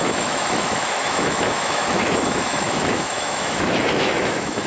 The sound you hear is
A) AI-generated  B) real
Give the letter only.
A